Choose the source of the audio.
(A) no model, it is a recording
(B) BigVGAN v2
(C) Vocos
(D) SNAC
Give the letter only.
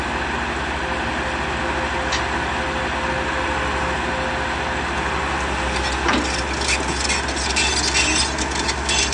A